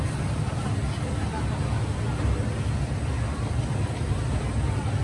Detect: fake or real real